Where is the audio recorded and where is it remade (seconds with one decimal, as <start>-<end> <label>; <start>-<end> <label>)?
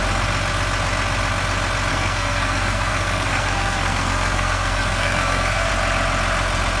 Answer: 0.0-1.9 recorded; 1.9-5.7 remade; 5.7-6.8 recorded